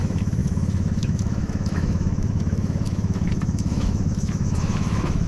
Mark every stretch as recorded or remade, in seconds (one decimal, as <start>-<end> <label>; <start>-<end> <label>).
0.0-5.3 remade